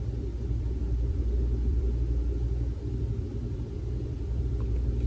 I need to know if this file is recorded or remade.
remade